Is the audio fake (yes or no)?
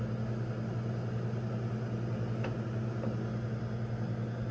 no